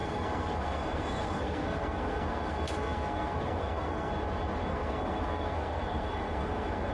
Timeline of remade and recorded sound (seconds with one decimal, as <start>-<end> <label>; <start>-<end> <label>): 0.0-4.1 remade; 4.1-4.7 recorded; 4.7-6.9 remade